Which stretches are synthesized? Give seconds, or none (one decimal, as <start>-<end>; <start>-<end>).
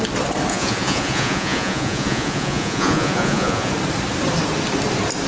0.5-3.7